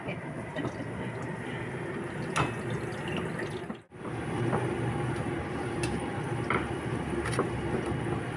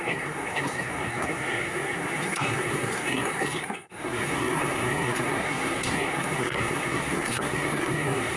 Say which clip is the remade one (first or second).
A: second